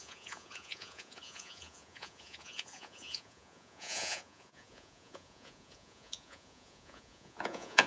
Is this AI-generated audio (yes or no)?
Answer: yes